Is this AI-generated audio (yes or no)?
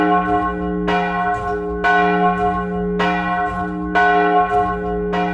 no